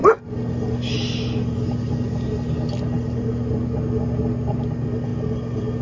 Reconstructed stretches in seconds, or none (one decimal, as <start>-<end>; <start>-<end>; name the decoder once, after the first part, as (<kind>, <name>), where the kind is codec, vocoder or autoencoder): none